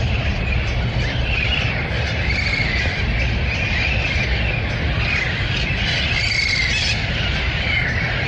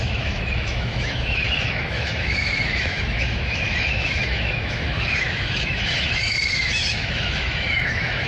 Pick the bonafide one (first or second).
first